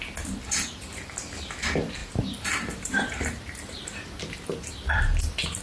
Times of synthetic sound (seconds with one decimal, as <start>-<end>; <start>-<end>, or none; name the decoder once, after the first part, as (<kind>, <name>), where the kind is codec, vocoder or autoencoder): 2.0-5.6 (vocoder, BigVGAN v2)